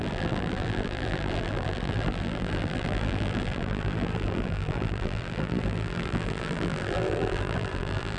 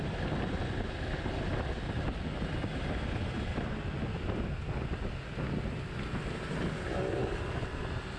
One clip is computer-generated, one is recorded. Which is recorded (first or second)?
second